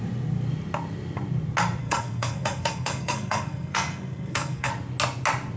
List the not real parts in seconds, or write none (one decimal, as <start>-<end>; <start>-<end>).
1.8-4.7